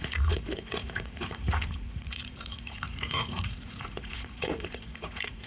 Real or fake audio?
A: fake